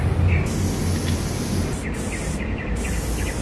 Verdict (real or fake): real